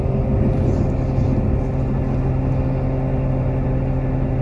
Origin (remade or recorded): recorded